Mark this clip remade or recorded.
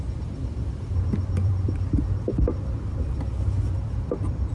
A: remade